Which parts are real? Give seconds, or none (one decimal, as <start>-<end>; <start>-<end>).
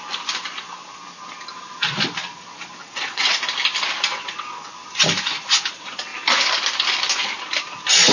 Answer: 0.0-2.8; 3.4-4.1; 4.7-8.1